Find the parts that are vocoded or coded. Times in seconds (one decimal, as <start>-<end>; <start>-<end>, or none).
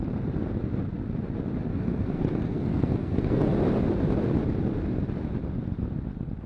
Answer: 1.7-3.4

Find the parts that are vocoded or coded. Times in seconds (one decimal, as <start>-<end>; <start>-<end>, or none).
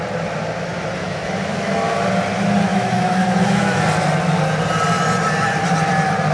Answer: 1.0-2.1; 2.7-3.8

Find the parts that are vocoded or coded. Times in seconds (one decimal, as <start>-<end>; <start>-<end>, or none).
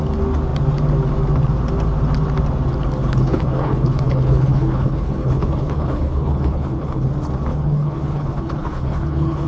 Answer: 3.0-7.1; 7.5-9.5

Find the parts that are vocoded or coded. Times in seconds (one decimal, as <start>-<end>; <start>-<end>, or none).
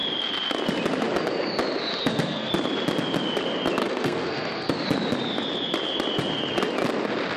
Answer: 1.9-2.5; 3.8-4.7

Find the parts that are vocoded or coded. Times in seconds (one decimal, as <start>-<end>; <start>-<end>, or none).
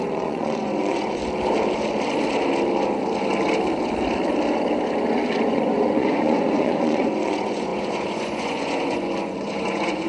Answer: 0.0-1.2; 5.4-10.1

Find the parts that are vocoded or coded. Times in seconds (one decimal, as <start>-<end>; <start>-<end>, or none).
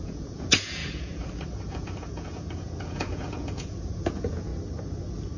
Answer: 0.0-4.5